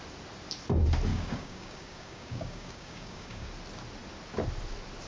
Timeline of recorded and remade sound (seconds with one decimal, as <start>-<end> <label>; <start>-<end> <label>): 0.0-1.1 recorded; 1.1-3.5 remade; 3.5-5.1 recorded